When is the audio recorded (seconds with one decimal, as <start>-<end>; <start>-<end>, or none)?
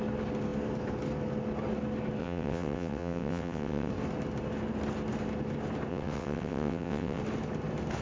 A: 0.0-2.2; 3.9-5.9; 7.2-8.0